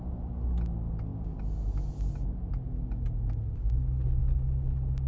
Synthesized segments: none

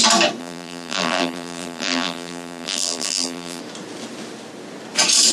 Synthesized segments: 0.4-3.6 (vocoder, BigVGAN v2)

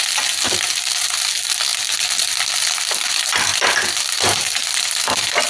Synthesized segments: none